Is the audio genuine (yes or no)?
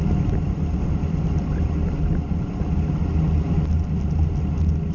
yes